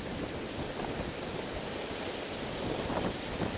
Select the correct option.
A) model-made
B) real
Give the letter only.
A